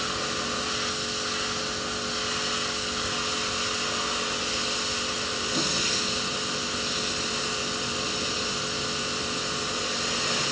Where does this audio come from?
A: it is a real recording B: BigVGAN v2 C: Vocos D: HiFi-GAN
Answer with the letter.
A